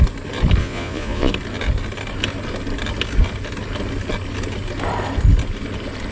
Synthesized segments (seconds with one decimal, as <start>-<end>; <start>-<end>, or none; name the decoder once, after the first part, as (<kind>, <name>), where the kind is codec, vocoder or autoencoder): 0.6-1.3 (vocoder, Vocos)